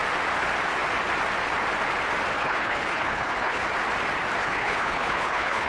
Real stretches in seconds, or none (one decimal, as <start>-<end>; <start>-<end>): 0.0-2.3; 3.6-4.4